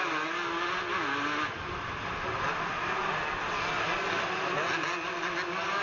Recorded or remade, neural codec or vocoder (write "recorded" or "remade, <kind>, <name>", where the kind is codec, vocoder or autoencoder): recorded